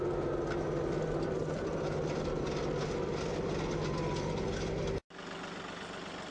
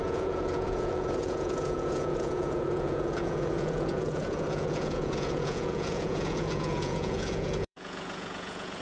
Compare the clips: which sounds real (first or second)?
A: first